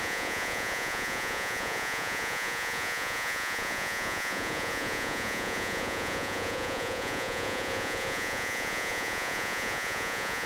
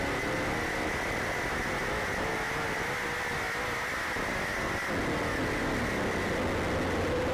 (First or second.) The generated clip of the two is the first